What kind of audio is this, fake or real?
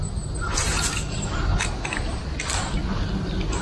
real